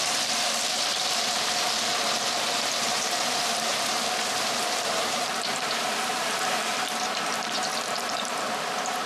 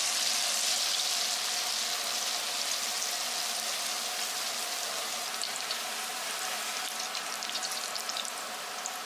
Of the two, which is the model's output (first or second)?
first